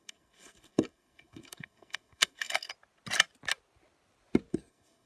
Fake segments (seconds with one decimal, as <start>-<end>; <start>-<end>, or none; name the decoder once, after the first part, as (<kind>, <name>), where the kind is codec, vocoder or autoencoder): 0.0-2.7 (codec, SNAC); 4.5-5.1